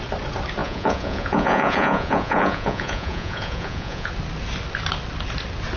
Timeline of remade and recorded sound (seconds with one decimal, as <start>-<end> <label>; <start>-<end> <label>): 0.0-0.6 recorded; 0.6-4.1 remade; 4.1-5.8 recorded